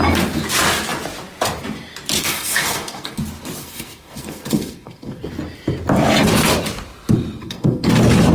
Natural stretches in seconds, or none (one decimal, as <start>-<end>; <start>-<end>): 0.0-2.2; 3.2-3.6; 5.3-7.4; 7.9-8.3